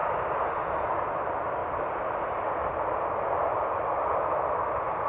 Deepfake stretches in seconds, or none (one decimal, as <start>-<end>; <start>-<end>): none